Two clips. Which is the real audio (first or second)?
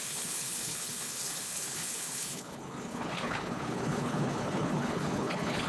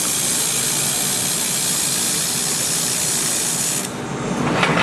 second